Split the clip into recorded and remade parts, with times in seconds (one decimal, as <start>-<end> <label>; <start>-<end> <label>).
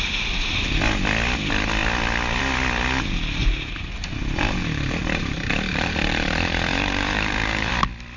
0.0-3.4 recorded; 3.4-7.7 remade; 7.7-8.2 recorded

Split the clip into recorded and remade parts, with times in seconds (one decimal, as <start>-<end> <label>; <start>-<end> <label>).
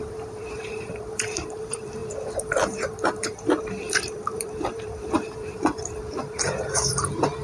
0.0-7.4 remade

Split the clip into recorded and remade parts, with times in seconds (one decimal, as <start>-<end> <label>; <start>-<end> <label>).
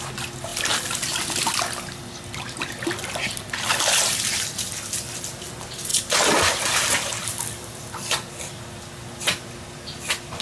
0.0-7.1 recorded; 7.1-8.5 remade; 8.5-10.4 recorded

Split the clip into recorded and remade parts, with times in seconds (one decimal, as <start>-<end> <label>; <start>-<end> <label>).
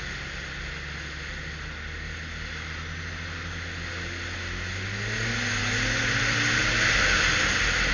0.0-7.9 recorded